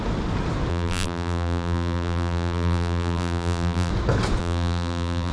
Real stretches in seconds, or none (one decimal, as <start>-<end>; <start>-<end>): 0.0-0.7; 3.9-4.4